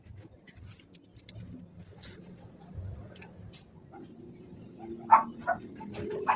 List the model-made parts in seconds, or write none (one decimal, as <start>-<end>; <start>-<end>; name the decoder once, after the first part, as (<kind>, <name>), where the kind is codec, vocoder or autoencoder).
none